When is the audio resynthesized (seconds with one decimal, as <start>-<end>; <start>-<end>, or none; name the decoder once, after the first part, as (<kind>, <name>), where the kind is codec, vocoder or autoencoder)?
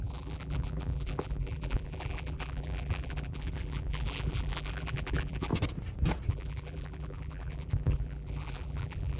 0.0-5.5 (vocoder, BigVGAN v2); 6.3-9.2